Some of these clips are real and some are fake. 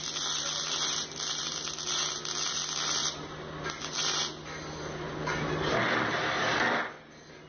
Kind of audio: real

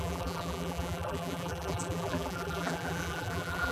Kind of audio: fake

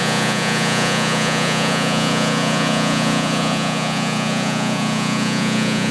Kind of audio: fake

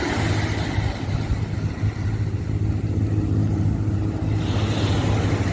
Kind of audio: real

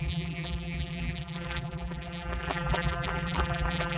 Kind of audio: fake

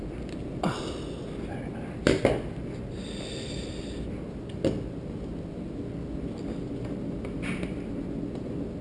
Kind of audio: real